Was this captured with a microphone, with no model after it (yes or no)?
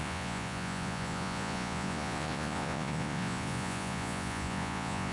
no